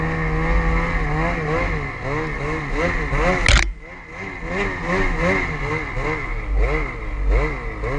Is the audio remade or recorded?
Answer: recorded